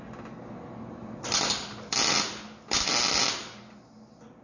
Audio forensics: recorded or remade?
recorded